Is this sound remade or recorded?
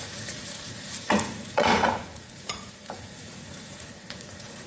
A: remade